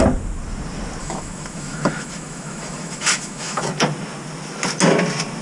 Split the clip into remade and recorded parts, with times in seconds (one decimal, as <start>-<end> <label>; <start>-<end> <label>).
0.0-1.0 recorded; 1.0-3.7 remade; 3.7-5.4 recorded

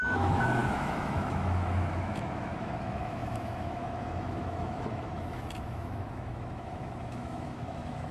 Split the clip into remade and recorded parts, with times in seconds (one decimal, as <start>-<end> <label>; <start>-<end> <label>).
0.0-8.1 remade

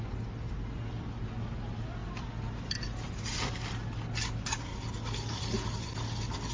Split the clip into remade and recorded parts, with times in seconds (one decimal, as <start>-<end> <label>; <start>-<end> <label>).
0.0-6.5 recorded

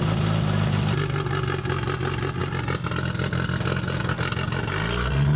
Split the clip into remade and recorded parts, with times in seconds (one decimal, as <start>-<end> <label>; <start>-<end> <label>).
0.0-5.4 recorded

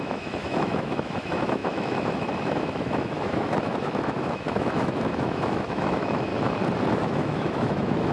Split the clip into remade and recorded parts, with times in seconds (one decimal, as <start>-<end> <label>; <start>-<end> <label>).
0.0-6.3 remade; 6.3-6.9 recorded; 6.9-8.1 remade

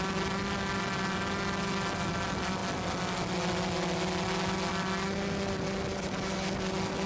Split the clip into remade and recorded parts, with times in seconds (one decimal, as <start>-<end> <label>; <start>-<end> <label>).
0.0-7.1 recorded

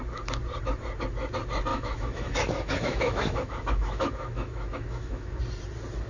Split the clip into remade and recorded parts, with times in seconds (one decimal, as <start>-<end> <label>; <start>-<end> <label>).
0.0-1.7 recorded; 1.7-5.4 remade; 5.4-6.1 recorded

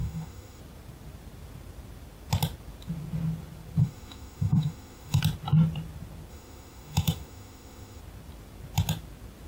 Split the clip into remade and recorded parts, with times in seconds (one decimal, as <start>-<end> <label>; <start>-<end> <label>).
0.0-0.6 remade; 0.6-3.8 recorded; 3.8-5.2 remade; 5.2-6.3 recorded; 6.3-8.0 remade; 8.0-9.5 recorded